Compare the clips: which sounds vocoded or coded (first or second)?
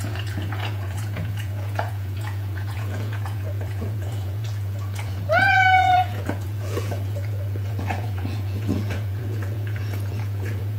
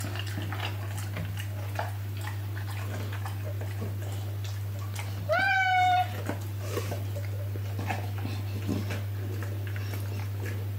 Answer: first